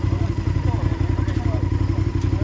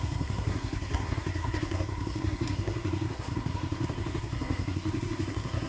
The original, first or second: first